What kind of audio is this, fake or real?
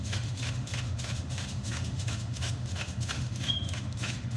fake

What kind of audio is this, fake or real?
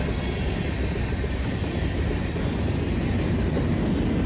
real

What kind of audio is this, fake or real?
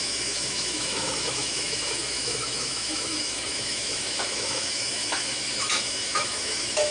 fake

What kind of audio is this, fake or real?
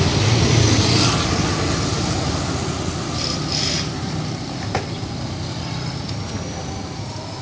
real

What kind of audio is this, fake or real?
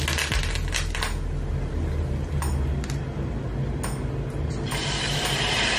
real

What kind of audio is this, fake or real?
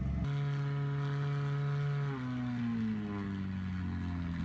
real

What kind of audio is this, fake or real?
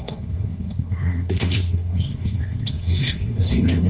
fake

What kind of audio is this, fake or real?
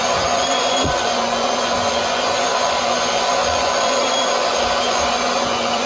fake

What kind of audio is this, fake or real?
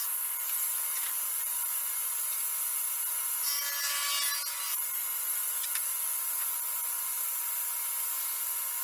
real